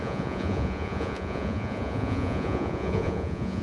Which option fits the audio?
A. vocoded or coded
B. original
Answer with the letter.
A